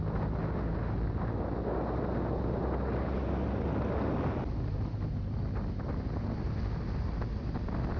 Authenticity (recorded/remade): recorded